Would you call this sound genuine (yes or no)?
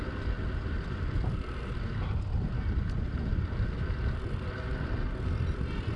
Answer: yes